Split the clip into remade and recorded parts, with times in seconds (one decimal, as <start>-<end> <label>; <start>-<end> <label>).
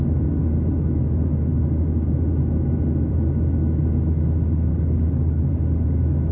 0.0-4.7 recorded; 4.7-5.5 remade; 5.5-6.3 recorded